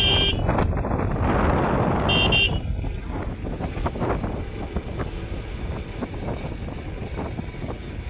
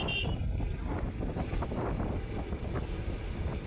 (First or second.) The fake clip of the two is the second